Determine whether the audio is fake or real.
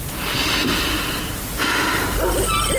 real